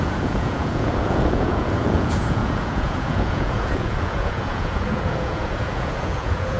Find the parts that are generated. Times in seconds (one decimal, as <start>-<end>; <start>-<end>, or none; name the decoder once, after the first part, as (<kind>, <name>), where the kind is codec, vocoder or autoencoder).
0.0-6.6 (vocoder, Vocos)